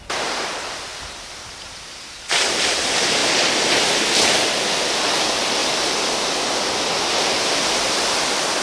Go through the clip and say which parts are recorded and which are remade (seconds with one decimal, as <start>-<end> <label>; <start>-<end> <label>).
0.0-3.2 recorded; 3.2-3.7 remade; 3.7-5.6 recorded; 5.6-8.6 remade